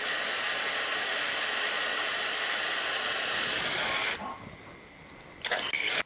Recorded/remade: recorded